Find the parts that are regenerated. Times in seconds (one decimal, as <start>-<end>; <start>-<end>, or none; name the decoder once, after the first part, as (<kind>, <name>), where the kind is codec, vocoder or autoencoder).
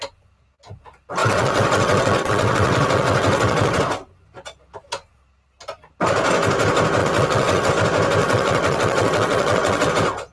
1.2-3.8 (vocoder, WaveNeXt); 7.0-7.7; 8.2-9.9